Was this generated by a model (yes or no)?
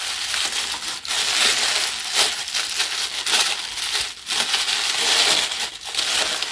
no